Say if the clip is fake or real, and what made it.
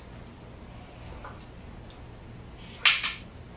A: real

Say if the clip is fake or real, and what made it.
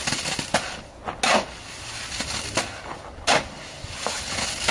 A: real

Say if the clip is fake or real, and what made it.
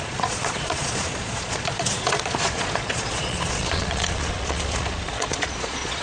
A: fake, vocoder, Vocos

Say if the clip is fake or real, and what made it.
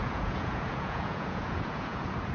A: fake, vocoder, Vocos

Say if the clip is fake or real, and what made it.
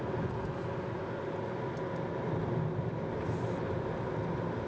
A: real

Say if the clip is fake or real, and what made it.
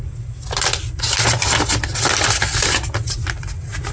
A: real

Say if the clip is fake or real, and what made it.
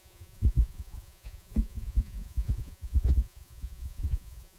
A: fake, vocoder, Vocos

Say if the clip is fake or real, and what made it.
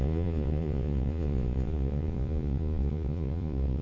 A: fake, vocoder, Vocos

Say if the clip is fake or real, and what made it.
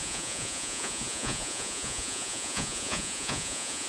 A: fake, vocoder, Vocos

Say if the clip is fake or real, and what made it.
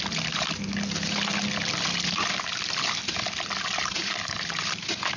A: real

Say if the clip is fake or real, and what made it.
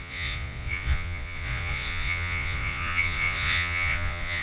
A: fake, vocoder, Vocos